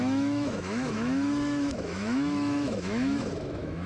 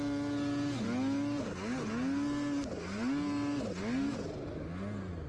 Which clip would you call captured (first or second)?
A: second